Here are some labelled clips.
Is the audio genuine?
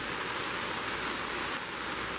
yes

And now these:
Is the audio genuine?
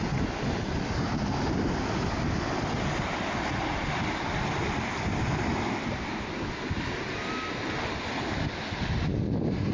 yes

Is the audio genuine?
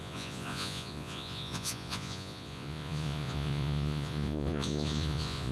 no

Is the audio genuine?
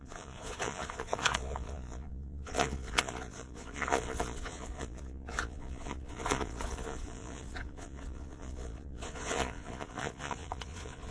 no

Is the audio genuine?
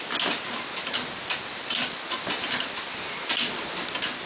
yes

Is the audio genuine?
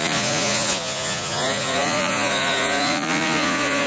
no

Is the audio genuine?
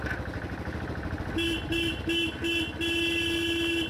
yes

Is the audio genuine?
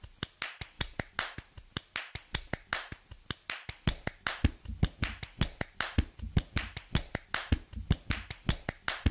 yes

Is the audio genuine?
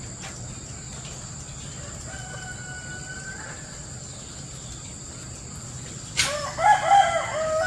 yes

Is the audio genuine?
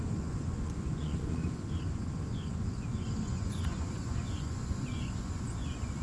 no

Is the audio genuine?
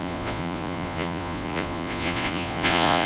no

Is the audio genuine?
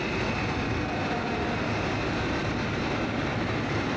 yes